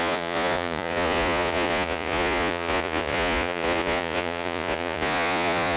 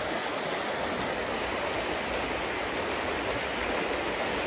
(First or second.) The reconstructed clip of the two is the first